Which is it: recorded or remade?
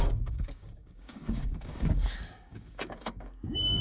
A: remade